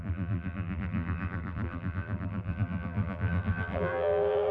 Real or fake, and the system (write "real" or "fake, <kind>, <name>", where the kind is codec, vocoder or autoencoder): fake, vocoder, BigVGAN v2